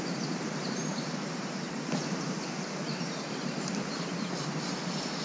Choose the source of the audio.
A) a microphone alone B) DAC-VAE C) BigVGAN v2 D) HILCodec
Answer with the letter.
C